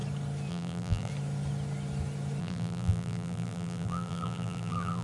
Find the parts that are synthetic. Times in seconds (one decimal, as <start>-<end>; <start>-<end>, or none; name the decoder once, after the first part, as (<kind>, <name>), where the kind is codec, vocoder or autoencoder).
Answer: 0.5-1.1 (vocoder, BigVGAN v2); 2.4-5.0